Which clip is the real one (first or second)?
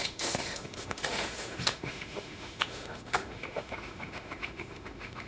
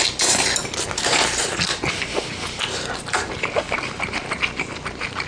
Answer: second